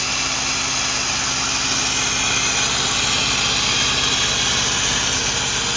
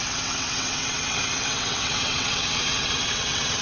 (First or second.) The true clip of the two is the first